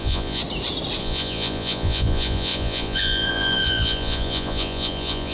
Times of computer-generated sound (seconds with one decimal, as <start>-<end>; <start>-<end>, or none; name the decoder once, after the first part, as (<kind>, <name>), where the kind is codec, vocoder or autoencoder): 0.0-0.4 (vocoder, Vocos); 1.0-5.3